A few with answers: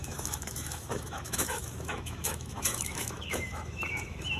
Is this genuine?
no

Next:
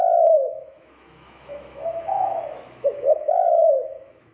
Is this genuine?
no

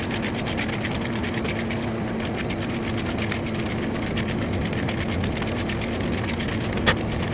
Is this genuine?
yes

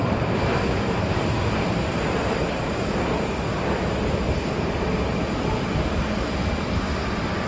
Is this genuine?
yes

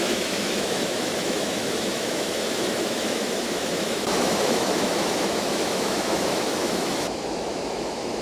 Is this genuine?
no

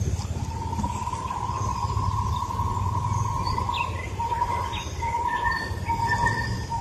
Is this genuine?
yes